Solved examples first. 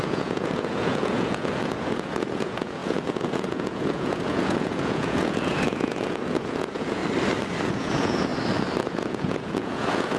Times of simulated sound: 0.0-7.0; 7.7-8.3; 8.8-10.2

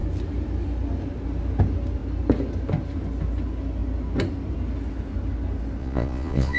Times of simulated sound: 5.8-6.6

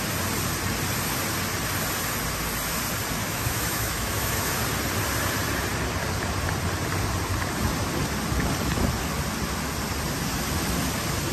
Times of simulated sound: 3.2-4.6

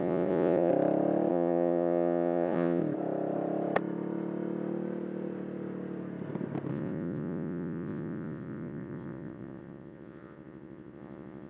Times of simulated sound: 0.0-0.7; 1.3-2.8; 6.7-11.5

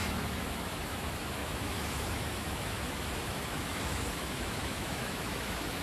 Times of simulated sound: 0.0-5.8

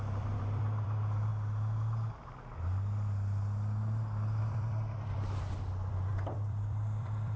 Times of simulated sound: 0.0-1.3; 4.4-7.4